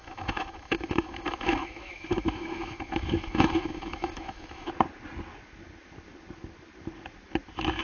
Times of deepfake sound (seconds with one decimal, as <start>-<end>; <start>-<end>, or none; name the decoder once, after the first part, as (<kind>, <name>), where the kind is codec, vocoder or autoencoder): 0.0-4.7 (autoencoder, DAC-VAE)